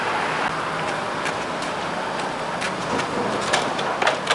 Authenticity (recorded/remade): recorded